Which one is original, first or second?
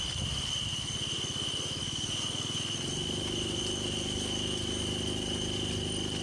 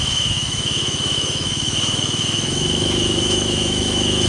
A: first